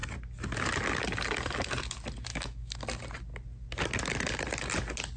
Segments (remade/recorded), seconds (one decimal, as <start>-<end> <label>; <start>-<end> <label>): 0.0-2.3 recorded; 2.3-2.8 remade; 2.8-5.2 recorded